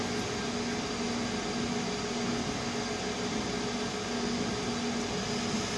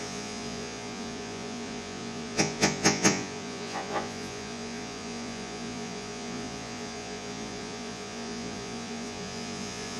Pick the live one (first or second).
first